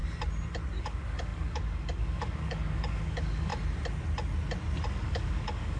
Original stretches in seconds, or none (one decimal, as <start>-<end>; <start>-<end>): 0.0-0.8; 3.5-4.9